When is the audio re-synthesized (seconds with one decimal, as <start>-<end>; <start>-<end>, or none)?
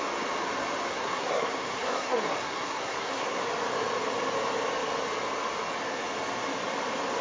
0.9-3.4